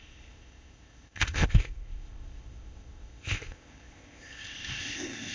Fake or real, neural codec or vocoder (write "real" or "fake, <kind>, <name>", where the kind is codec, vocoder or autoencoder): fake, codec, ZipCodec